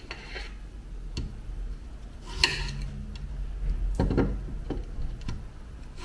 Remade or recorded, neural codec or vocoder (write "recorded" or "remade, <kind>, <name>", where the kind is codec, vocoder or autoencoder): recorded